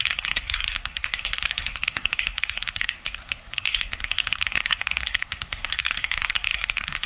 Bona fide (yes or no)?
no